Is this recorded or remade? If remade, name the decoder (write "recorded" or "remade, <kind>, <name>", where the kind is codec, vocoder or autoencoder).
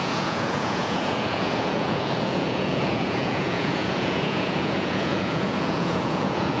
remade, vocoder, Vocos